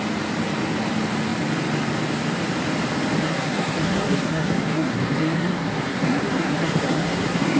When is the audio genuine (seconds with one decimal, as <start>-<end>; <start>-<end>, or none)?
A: 0.0-3.2